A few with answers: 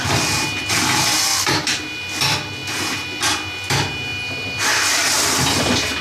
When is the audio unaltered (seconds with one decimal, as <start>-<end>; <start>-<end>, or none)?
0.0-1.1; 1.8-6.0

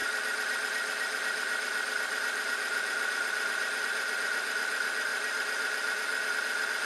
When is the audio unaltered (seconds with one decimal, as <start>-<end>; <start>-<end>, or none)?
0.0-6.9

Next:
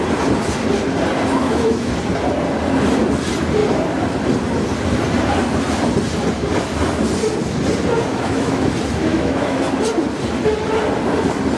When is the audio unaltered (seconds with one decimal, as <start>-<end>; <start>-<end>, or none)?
0.0-1.4; 1.9-8.1; 8.7-9.1; 9.6-11.6